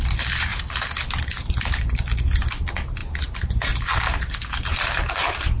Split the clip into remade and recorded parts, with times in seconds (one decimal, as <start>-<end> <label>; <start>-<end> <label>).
0.0-5.6 remade